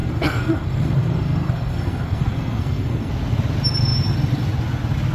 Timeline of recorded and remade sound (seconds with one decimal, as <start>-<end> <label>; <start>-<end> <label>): 0.0-3.1 remade; 3.1-5.1 recorded